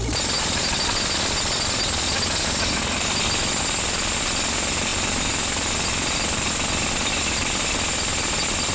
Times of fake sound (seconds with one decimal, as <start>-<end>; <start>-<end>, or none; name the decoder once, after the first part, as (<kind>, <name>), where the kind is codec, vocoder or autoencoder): none